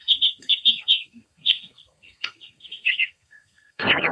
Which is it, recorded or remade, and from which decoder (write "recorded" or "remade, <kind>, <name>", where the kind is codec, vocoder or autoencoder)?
remade, codec, SNAC